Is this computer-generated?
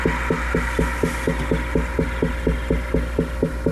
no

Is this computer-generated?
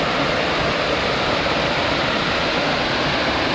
no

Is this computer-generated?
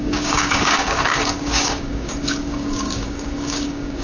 yes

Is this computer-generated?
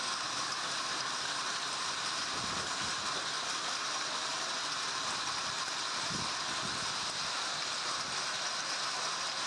no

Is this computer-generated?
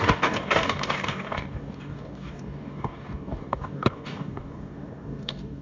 yes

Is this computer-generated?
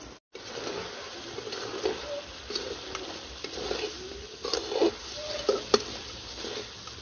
no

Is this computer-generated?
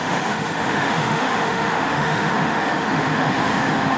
yes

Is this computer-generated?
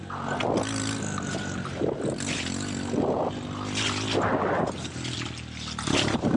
no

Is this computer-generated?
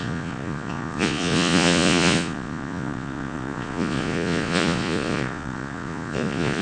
yes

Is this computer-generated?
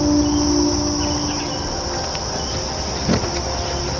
no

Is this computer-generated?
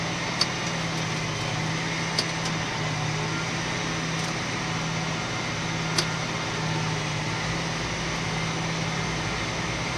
no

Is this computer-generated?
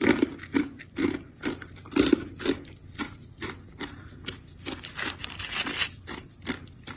no